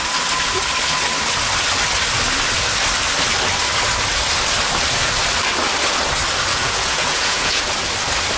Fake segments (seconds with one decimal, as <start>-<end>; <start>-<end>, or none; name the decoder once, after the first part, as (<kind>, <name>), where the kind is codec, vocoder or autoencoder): 6.5-7.6 (vocoder, Vocos)